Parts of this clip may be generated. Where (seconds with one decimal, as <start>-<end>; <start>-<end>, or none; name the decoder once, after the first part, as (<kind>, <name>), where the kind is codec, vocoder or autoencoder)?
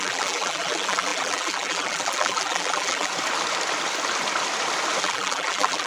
0.0-3.1 (vocoder, BigVGAN v2); 5.0-5.9